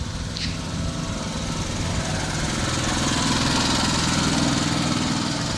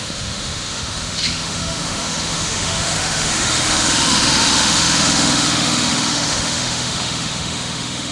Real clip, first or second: first